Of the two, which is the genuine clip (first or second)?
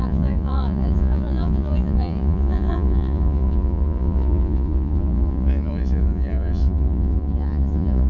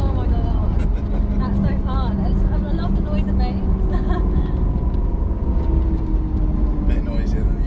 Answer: second